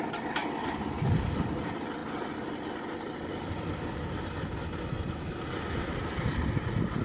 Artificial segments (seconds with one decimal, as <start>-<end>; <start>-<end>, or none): none